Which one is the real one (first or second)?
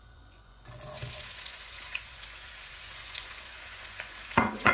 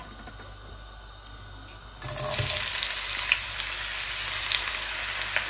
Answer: second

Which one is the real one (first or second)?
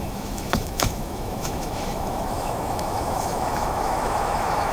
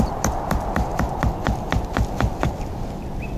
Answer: second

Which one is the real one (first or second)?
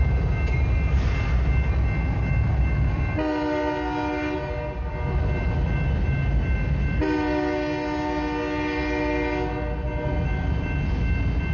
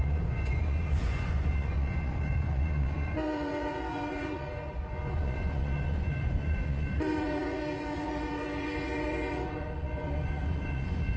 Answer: first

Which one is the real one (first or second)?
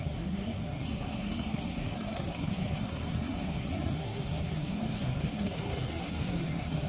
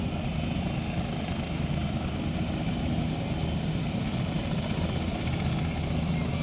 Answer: second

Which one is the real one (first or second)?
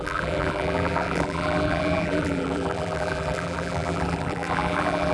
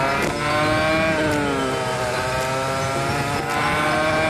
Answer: second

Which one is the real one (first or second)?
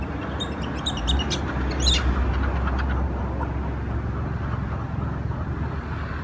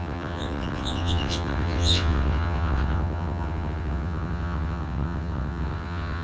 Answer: first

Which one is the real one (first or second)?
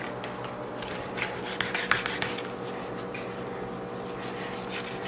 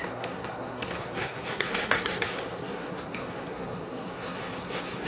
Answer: first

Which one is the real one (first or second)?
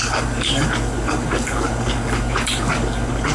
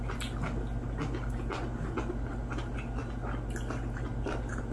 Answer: second